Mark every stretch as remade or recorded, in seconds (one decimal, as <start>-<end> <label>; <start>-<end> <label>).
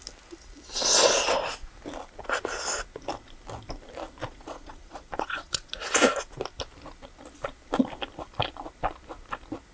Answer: 0.0-4.2 recorded; 4.2-5.7 remade; 5.7-9.7 recorded